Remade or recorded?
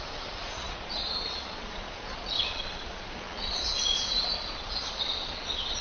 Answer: remade